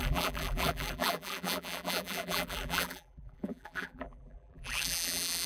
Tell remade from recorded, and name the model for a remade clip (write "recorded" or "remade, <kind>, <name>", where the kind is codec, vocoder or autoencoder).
remade, vocoder, BigVGAN v2